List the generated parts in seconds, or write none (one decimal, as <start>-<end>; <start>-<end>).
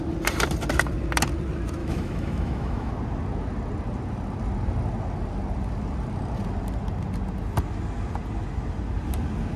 1.8-2.9